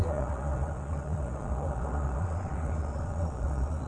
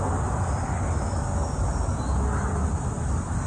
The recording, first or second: second